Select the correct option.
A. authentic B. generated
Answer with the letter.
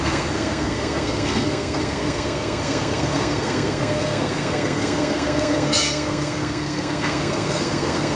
B